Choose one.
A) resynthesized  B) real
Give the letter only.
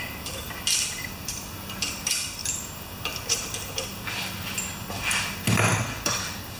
A